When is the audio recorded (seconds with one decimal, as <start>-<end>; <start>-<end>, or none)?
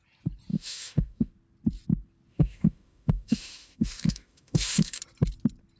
0.0-0.5; 1.3-2.3; 5.0-5.8